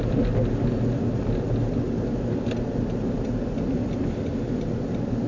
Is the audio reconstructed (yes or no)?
no